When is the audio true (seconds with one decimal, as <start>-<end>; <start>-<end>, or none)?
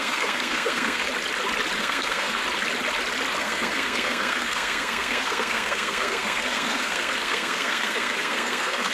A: 1.1-1.8; 2.4-3.4